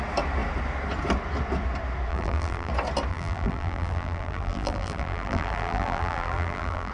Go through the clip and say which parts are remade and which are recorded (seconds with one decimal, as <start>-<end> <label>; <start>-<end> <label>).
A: 0.0-2.1 recorded; 2.1-2.7 remade; 2.7-3.1 recorded; 3.1-6.9 remade